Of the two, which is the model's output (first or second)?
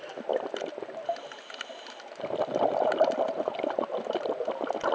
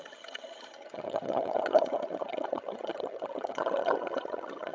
second